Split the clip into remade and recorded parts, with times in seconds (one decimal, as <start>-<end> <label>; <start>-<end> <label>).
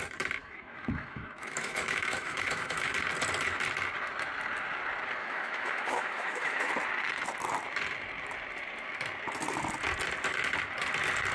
0.0-0.4 recorded; 0.4-2.9 remade; 2.9-5.2 recorded; 5.2-6.7 remade; 6.7-11.3 recorded